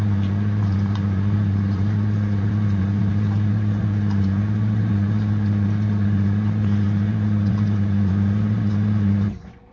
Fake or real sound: fake